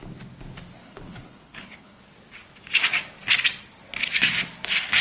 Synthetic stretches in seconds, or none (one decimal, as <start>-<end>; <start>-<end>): 0.8-2.0